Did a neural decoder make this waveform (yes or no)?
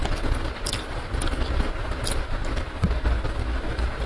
no